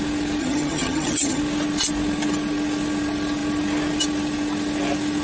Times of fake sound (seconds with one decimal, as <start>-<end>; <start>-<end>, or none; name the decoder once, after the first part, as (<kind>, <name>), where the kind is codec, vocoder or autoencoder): 0.4-1.4 (vocoder, HiFi-GAN)